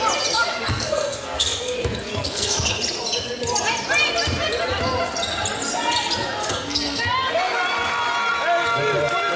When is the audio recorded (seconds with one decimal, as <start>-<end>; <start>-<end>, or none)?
0.0-0.7; 2.7-6.4; 7.0-9.4